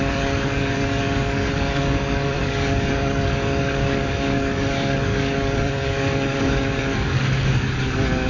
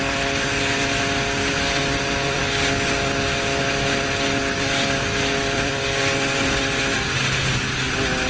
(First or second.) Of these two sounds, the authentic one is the second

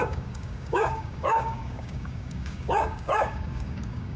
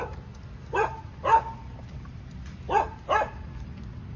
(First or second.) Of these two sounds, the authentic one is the second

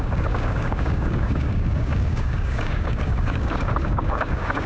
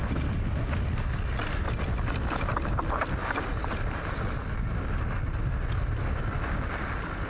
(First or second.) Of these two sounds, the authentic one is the second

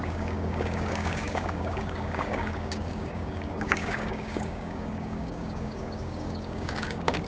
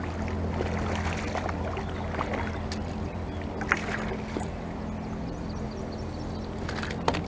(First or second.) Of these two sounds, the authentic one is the second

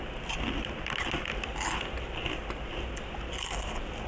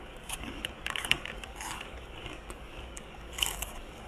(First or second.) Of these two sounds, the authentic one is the first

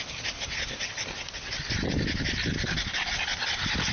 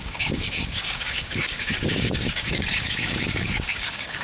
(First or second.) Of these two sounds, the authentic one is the first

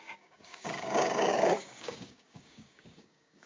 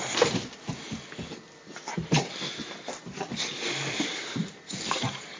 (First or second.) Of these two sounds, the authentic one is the second